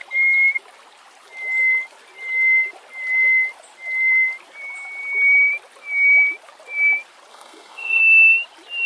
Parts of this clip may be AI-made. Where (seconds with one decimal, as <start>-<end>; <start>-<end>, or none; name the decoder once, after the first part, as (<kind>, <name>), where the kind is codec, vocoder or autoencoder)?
7.3-8.0 (codec, SNAC)